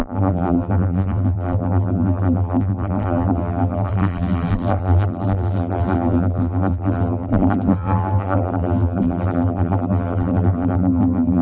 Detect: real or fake fake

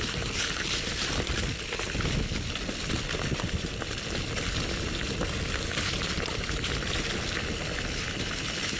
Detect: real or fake real